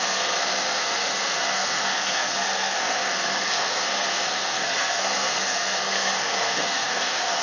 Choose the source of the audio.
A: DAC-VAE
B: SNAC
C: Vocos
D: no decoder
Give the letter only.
B